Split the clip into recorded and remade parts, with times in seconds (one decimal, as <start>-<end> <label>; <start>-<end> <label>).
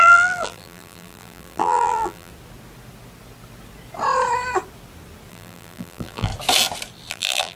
0.0-2.3 remade; 2.3-5.3 recorded; 5.3-6.3 remade; 6.3-7.1 recorded; 7.1-7.6 remade